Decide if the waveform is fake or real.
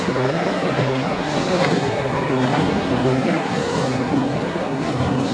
fake